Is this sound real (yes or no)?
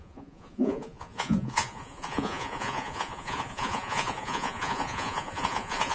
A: no